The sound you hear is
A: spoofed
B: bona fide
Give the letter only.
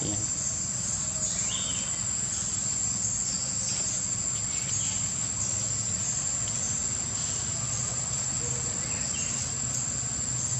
B